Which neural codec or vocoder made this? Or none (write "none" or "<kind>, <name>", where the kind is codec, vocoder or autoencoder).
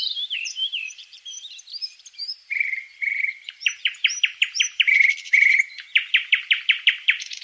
vocoder, BigVGAN v2